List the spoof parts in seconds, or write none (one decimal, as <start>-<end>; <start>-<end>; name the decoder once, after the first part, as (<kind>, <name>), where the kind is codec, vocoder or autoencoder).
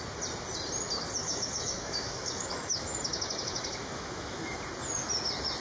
1.2-4.6 (autoencoder, DAC-VAE)